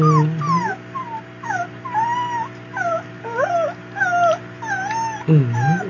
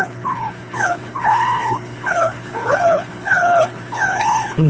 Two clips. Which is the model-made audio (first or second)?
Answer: second